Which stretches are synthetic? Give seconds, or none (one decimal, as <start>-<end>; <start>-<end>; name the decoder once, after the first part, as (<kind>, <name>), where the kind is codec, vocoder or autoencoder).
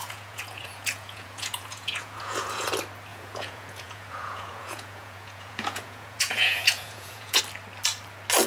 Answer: 0.0-2.7 (vocoder, Vocos); 3.1-7.4